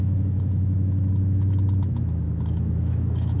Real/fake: fake